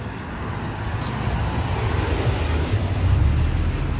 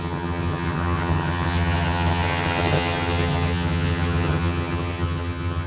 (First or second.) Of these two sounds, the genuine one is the first